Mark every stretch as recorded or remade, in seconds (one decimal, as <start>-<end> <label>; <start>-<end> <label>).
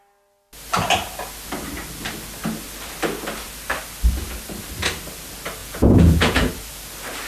0.0-5.6 recorded; 5.6-6.5 remade; 6.5-7.3 recorded